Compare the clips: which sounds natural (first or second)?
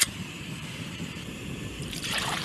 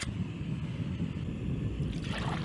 second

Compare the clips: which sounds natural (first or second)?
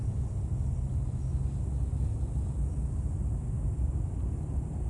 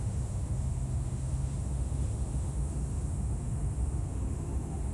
first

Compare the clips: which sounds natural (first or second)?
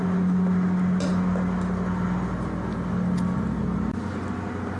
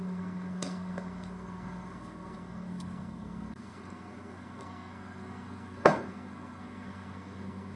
first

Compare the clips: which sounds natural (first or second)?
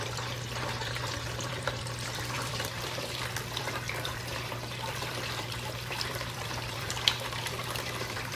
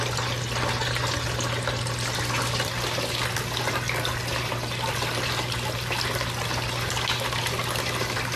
second